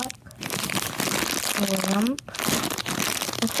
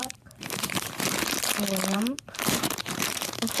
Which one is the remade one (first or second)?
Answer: second